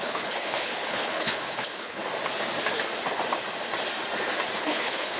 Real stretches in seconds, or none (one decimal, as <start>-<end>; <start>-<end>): 2.0-4.6